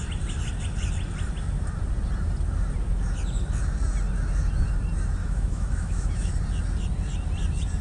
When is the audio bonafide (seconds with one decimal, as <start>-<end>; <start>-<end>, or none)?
0.0-5.2; 6.3-7.8